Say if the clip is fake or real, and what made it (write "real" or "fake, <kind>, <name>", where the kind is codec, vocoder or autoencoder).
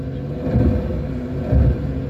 real